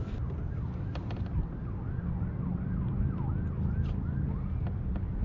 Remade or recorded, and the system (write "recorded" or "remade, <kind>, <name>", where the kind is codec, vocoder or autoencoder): recorded